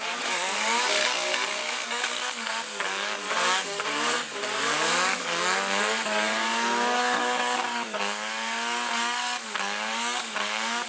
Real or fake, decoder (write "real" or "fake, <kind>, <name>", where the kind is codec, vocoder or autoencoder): fake, codec, DAC